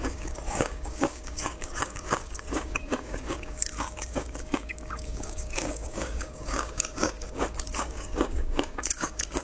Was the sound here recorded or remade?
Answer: remade